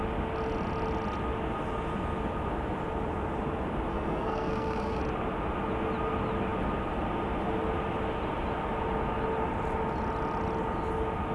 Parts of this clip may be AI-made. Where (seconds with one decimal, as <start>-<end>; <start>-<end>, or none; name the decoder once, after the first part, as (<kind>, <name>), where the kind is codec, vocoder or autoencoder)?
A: 3.9-5.0 (codec, SNAC)